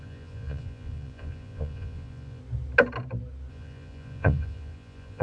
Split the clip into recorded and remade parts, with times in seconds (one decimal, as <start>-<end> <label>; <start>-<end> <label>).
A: 0.0-2.4 remade; 2.4-3.5 recorded; 3.5-5.2 remade